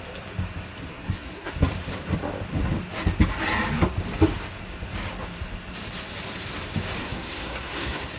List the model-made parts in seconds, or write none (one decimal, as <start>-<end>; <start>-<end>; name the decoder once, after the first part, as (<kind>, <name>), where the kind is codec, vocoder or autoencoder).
0.9-1.5 (codec, SNAC); 7.0-8.2